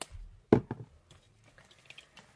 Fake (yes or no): no